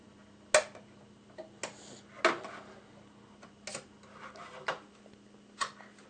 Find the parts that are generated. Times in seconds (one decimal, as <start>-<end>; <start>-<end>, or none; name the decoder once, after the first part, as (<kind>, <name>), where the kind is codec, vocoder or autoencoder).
none

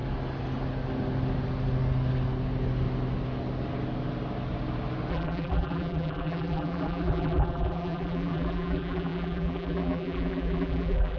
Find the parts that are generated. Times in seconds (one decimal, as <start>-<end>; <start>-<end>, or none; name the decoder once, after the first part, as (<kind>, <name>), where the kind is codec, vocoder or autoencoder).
5.1-11.2 (vocoder, BigVGAN v2)

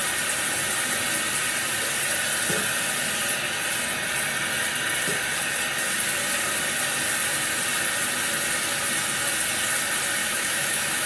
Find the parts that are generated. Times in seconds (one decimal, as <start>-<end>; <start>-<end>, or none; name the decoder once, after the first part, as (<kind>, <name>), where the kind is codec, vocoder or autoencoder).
10.2-11.1 (autoencoder, DAC-VAE)